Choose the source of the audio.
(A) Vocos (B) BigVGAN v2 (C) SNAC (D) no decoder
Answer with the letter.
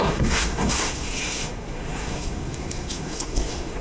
C